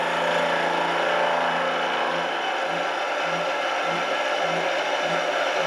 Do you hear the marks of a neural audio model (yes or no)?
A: no